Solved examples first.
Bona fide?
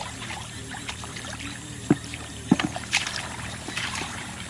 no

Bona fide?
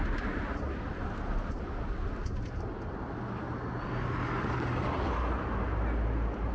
yes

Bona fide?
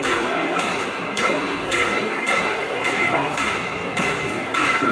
no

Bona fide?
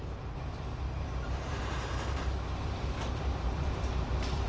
no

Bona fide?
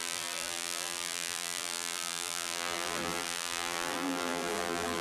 no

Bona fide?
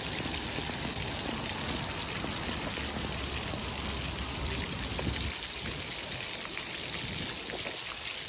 yes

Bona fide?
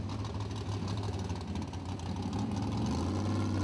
yes